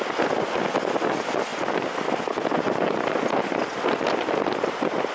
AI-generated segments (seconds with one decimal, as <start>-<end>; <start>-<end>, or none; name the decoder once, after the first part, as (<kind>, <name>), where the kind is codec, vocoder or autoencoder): none